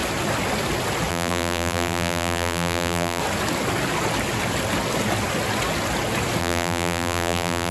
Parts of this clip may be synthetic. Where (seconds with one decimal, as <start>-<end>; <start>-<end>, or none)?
1.1-3.2; 6.4-7.7